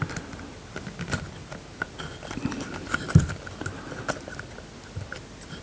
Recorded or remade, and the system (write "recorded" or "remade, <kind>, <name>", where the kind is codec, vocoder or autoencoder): recorded